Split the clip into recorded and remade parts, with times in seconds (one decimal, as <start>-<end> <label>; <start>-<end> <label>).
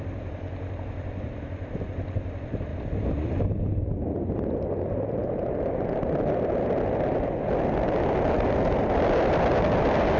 0.0-5.2 remade; 5.2-8.8 recorded; 8.8-10.2 remade